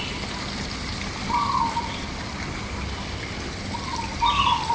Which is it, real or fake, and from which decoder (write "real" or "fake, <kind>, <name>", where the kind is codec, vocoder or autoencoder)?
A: real